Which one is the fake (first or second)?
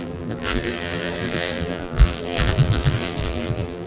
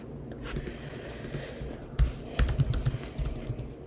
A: first